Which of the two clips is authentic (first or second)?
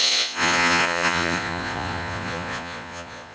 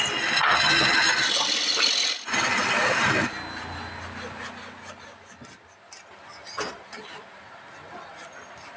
second